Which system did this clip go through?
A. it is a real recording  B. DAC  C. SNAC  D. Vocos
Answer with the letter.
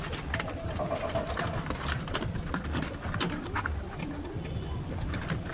A